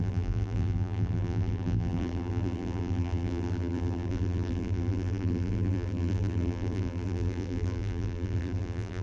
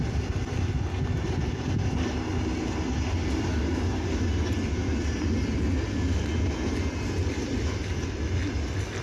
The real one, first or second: second